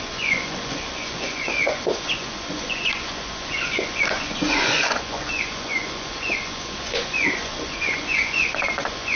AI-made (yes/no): yes